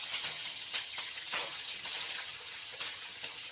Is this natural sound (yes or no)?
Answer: no